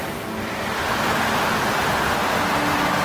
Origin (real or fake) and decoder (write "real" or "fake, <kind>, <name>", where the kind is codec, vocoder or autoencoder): real